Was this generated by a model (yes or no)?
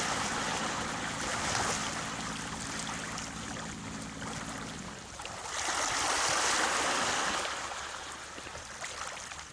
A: no